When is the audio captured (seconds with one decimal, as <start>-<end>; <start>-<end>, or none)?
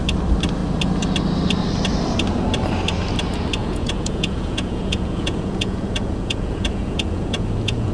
0.0-3.6